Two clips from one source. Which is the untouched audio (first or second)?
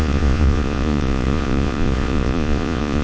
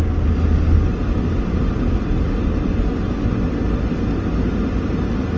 second